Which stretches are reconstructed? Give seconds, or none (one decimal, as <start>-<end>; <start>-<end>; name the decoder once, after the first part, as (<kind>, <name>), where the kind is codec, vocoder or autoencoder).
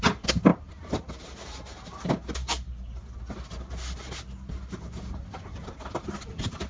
none